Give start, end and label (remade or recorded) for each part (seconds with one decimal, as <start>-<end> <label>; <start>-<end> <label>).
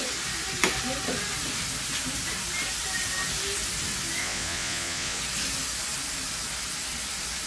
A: 0.0-4.2 recorded; 4.2-5.2 remade; 5.2-7.5 recorded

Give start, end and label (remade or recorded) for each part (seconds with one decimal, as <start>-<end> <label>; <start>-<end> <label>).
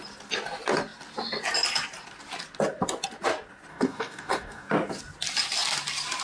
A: 0.0-3.7 recorded; 3.7-4.7 remade; 4.7-6.2 recorded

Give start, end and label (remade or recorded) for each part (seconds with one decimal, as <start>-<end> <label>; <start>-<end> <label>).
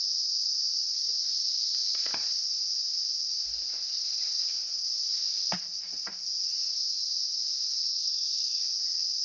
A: 0.0-7.9 recorded; 7.9-8.6 remade; 8.6-9.2 recorded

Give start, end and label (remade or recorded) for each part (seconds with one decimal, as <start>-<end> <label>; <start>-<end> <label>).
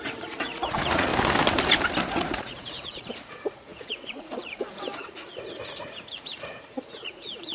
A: 0.0-1.1 remade; 1.1-2.1 recorded; 2.1-7.5 remade